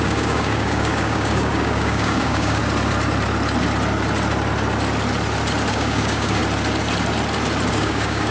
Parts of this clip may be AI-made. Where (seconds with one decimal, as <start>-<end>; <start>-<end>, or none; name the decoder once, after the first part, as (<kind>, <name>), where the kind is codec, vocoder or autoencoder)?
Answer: 0.0-2.6 (codec, DAC); 5.7-6.4; 7.7-8.3